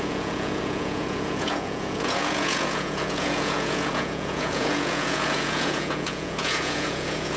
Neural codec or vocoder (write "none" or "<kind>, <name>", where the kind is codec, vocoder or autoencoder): vocoder, Vocos